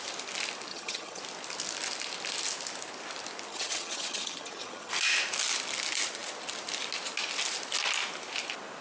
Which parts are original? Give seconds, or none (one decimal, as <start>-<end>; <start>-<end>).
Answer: 0.0-0.7; 1.2-3.5; 4.9-8.8